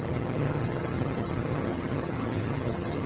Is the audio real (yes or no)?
no